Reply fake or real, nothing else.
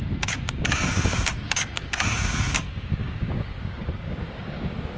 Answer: fake